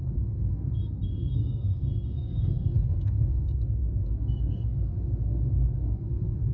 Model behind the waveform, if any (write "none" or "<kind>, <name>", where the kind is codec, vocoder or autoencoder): codec, SNAC